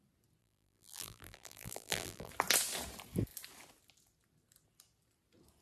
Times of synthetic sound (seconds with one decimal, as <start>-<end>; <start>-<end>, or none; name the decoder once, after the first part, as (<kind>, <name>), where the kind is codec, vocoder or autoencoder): 0.4-2.3 (vocoder, BigVGAN v2)